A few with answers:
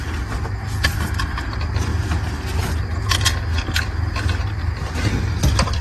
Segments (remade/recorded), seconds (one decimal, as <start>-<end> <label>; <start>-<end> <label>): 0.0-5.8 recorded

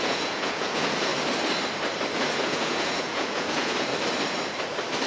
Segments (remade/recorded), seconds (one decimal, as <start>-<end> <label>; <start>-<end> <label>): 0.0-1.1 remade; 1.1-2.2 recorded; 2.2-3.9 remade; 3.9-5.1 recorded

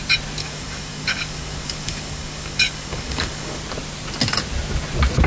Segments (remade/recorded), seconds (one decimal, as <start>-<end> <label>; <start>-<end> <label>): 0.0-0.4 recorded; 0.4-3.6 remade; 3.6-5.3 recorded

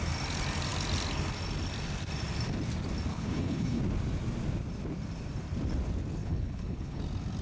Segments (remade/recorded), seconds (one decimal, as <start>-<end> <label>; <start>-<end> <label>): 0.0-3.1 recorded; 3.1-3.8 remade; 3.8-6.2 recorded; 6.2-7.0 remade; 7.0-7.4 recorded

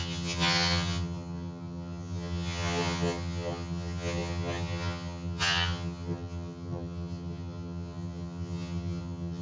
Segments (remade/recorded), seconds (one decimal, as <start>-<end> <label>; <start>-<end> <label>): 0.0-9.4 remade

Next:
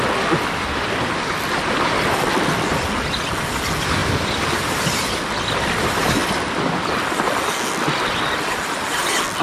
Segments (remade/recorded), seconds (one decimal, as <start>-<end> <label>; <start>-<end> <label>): 0.0-9.4 recorded

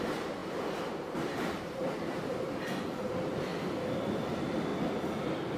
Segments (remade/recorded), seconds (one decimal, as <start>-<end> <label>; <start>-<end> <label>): 0.0-3.5 remade; 3.5-4.3 recorded; 4.3-4.7 remade; 4.7-5.6 recorded